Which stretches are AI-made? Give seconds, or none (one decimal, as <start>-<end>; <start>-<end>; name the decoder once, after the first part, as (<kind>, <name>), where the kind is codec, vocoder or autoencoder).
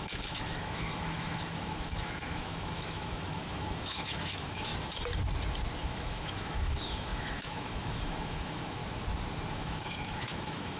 0.0-4.7 (autoencoder, DAC-VAE); 5.8-8.8; 9.5-10.8